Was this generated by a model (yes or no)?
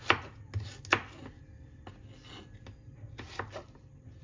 no